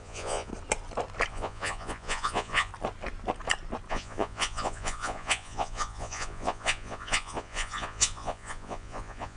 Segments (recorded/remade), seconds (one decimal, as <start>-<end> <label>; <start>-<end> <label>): 0.0-0.5 remade; 0.5-1.3 recorded; 1.3-2.7 remade; 2.7-3.9 recorded; 3.9-9.4 remade